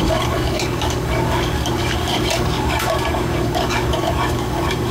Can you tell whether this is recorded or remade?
remade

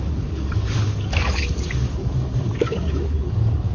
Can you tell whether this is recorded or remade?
remade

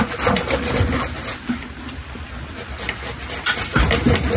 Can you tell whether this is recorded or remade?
recorded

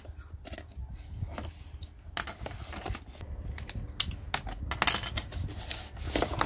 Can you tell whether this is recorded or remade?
recorded